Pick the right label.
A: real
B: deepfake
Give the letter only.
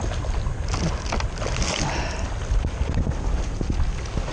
A